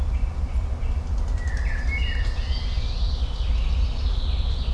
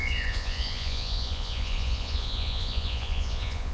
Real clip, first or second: first